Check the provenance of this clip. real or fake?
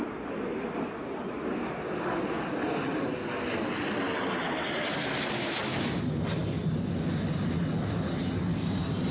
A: real